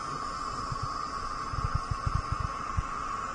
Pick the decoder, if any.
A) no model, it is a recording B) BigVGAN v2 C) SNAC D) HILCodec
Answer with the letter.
A